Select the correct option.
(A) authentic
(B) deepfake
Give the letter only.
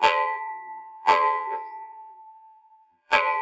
B